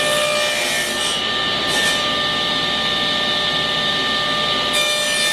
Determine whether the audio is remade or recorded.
recorded